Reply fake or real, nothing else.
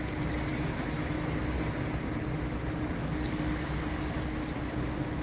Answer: real